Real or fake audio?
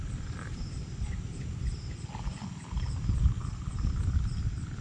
real